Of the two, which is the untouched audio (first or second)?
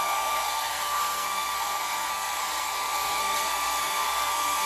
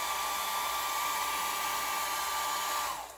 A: second